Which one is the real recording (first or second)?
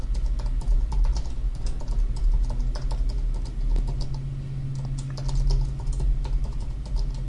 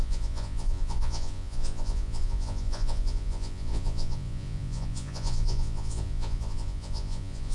first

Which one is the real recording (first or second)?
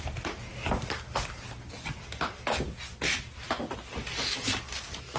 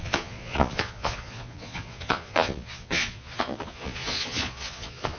first